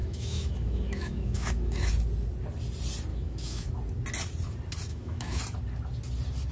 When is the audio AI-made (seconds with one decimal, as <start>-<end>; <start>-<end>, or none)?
0.0-1.9; 3.1-3.7; 4.9-5.4